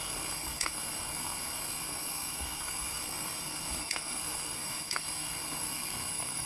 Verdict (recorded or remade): remade